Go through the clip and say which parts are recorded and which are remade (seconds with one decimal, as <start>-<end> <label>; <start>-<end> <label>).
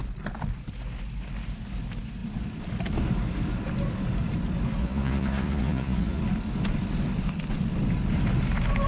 0.0-4.8 recorded; 4.8-6.2 remade; 6.2-8.9 recorded